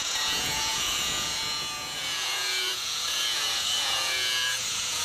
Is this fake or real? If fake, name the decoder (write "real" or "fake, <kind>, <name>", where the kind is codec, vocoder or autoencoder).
fake, vocoder, Vocos